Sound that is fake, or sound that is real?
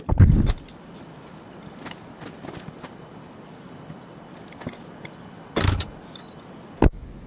real